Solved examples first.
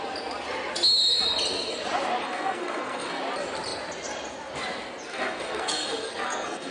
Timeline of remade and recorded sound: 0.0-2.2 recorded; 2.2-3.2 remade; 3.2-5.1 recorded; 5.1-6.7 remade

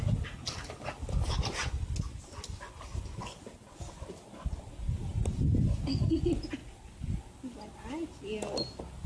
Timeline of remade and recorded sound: 0.0-9.1 recorded

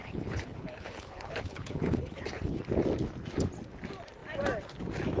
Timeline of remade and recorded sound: 0.0-2.6 remade; 2.6-5.2 recorded

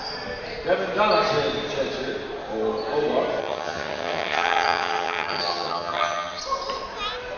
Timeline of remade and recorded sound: 0.0-3.4 recorded; 3.4-6.4 remade; 6.4-7.4 recorded

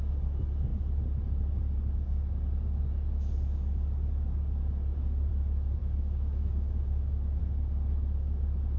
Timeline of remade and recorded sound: 0.0-5.8 recorded; 5.8-7.4 remade; 7.4-8.8 recorded

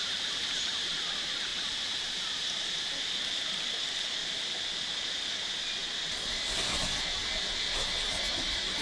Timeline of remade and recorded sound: 0.0-1.0 remade; 1.0-1.5 recorded; 1.5-2.7 remade; 2.7-4.2 recorded; 4.2-4.8 remade; 4.8-8.8 recorded

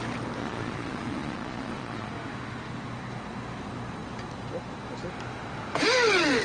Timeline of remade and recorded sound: 0.0-0.4 recorded; 0.4-2.1 remade; 2.1-6.4 recorded

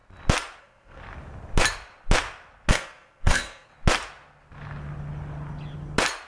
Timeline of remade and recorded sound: 0.0-0.6 recorded; 0.6-1.0 remade; 1.0-2.7 recorded; 2.7-3.7 remade; 3.7-6.3 recorded